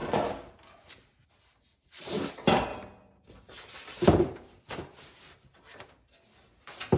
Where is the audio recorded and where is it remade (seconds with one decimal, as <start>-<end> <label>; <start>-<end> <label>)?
0.0-0.9 remade; 0.9-1.7 recorded; 1.7-2.3 remade; 2.3-2.7 recorded; 2.7-6.1 remade; 6.1-7.0 recorded